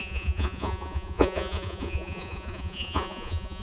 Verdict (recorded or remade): remade